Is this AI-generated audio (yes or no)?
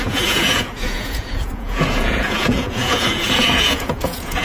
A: yes